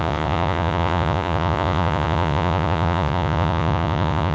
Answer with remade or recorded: remade